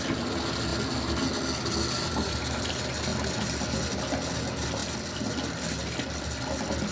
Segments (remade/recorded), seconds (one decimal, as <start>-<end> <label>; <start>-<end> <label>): 0.0-6.9 recorded